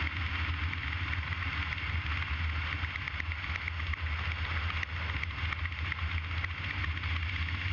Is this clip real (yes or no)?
yes